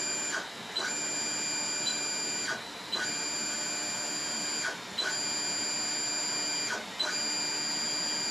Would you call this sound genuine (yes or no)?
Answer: yes